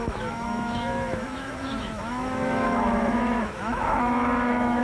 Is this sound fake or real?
fake